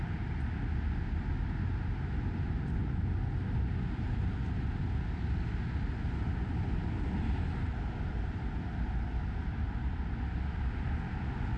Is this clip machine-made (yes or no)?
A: no